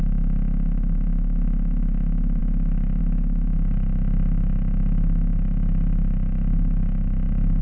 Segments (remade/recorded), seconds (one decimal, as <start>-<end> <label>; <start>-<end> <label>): 0.0-7.6 recorded